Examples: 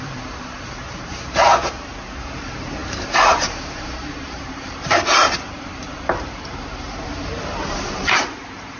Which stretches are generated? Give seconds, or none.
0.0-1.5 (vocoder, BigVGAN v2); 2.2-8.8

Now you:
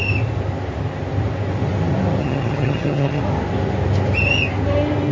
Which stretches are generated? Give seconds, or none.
2.2-3.2 (vocoder, HiFi-GAN)

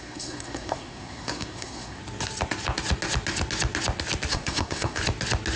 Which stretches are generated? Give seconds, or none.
0.0-2.0 (codec, SNAC); 4.3-5.0